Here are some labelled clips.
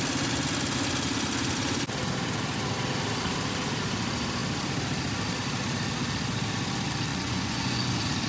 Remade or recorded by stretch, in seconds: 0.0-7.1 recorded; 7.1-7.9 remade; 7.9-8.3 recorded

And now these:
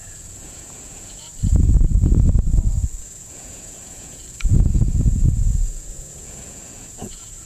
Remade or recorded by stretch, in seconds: 0.0-1.3 remade; 1.3-3.0 recorded; 3.0-7.5 remade